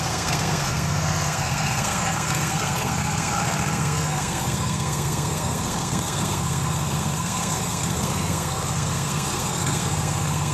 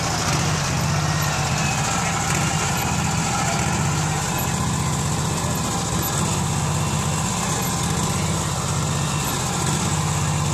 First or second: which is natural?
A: second